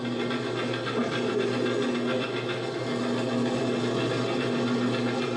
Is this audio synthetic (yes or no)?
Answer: no